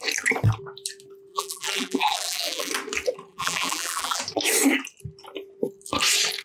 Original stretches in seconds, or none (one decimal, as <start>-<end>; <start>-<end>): 0.0-1.3; 2.7-3.3; 4.2-6.4